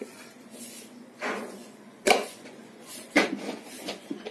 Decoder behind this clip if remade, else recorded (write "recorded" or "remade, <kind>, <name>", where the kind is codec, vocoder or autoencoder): remade, vocoder, Vocos